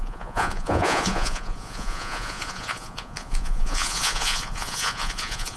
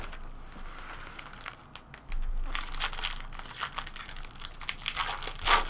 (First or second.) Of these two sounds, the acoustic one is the second